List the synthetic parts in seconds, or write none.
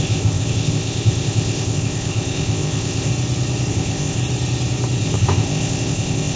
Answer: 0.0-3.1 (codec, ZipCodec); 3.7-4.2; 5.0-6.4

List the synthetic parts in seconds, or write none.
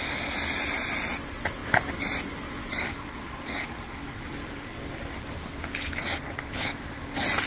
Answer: none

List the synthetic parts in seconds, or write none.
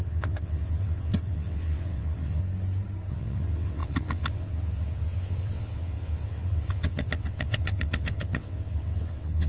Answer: 0.0-2.4 (vocoder, WaveNeXt); 3.1-9.5